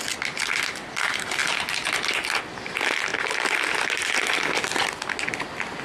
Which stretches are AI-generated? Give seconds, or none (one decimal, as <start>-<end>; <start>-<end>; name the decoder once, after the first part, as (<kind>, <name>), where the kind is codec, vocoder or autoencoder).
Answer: none